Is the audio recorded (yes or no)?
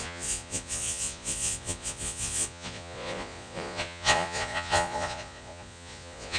no